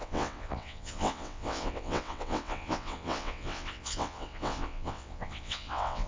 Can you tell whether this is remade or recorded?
remade